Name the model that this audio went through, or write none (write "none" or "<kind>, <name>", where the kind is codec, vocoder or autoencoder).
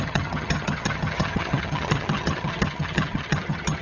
vocoder, HiFi-GAN